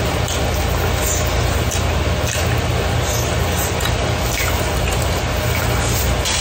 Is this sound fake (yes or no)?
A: no